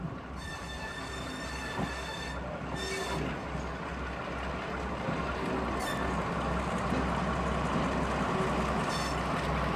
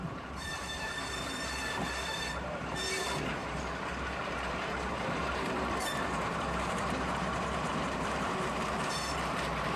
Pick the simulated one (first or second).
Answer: second